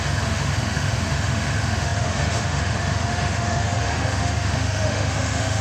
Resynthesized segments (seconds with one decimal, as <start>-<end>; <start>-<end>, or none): 0.0-5.6